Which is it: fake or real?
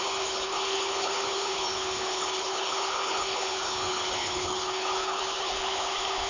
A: fake